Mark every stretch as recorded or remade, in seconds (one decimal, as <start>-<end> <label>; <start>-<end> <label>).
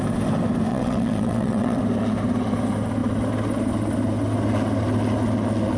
0.0-0.7 recorded; 0.7-1.8 remade; 1.8-5.8 recorded